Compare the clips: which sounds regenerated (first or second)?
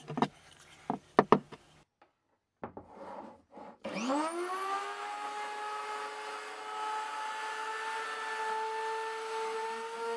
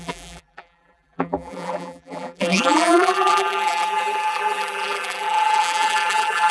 second